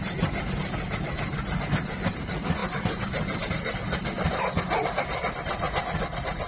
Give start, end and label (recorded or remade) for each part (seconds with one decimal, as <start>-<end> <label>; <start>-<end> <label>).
0.0-6.5 recorded